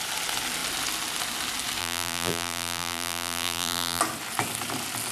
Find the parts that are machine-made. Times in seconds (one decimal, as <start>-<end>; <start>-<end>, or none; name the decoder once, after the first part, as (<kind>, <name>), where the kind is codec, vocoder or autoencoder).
1.8-4.0 (vocoder, BigVGAN v2)